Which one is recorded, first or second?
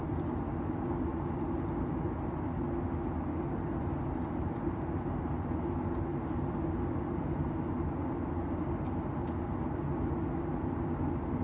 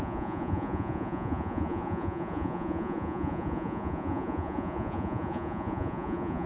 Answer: first